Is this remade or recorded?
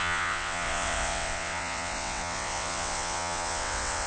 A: remade